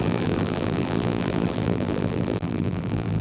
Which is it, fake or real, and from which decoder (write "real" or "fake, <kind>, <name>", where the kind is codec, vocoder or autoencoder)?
fake, vocoder, BigVGAN v2